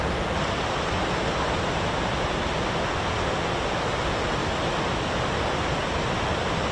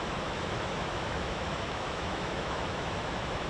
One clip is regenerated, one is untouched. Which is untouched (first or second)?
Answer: first